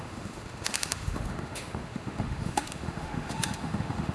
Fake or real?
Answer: fake